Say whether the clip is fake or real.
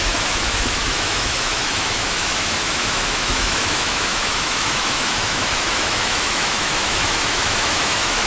fake